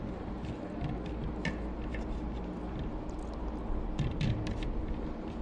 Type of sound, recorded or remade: recorded